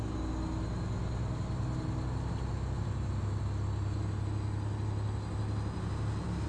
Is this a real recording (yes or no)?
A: yes